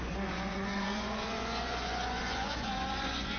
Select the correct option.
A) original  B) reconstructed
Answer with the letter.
B